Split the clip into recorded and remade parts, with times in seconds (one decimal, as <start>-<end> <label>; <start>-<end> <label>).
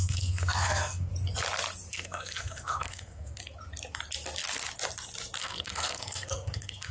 0.0-1.1 remade; 1.1-1.9 recorded; 1.9-3.4 remade; 3.4-5.4 recorded; 5.4-6.9 remade